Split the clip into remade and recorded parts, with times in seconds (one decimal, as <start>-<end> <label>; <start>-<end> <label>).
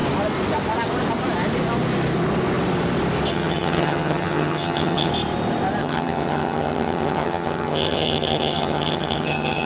0.0-3.3 recorded; 3.3-5.1 remade; 5.1-5.8 recorded; 5.8-9.7 remade